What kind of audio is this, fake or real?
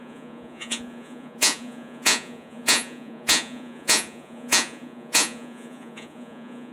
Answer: fake